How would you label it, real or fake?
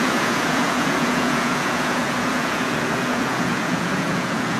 fake